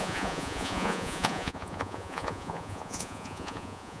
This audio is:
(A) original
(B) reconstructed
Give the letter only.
B